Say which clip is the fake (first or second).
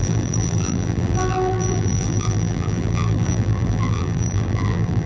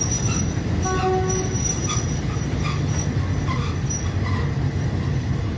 first